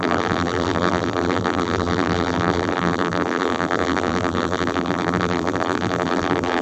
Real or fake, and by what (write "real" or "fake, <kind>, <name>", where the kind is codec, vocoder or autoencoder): fake, vocoder, BigVGAN v2